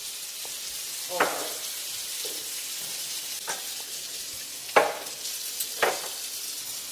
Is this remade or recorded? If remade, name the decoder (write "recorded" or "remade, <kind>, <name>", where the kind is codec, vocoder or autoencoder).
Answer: recorded